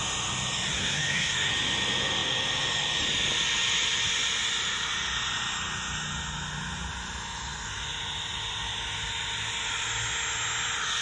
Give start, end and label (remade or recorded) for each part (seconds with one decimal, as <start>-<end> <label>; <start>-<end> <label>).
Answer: 0.0-0.7 recorded; 0.7-1.5 remade; 1.5-11.0 recorded